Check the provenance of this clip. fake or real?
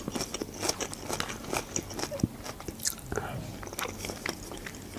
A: real